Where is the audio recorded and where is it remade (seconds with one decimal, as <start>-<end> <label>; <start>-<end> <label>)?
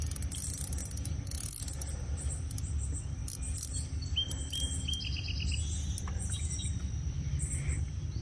0.0-8.2 recorded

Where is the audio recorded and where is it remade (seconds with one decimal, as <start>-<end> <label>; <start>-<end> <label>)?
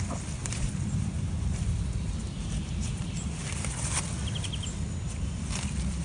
0.0-0.4 recorded; 0.4-4.0 remade; 4.0-6.0 recorded